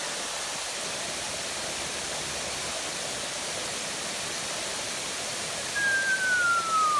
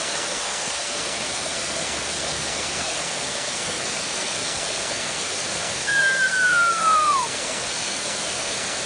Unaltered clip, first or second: first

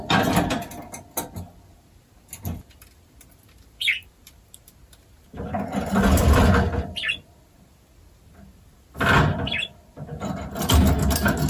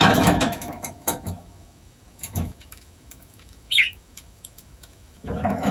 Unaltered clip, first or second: first